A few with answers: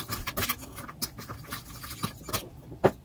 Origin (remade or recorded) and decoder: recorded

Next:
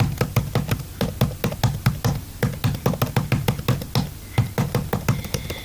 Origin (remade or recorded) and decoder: recorded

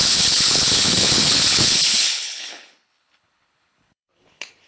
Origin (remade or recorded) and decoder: remade, codec, HILCodec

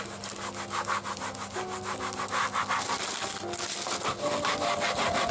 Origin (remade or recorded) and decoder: recorded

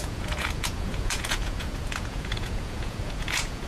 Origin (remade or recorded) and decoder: remade, vocoder, Vocos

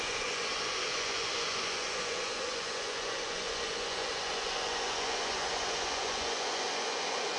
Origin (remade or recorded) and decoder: remade, vocoder, Vocos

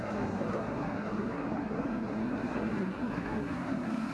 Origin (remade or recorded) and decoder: remade, codec, SNAC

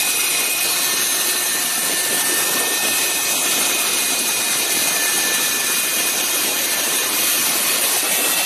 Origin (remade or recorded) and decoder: recorded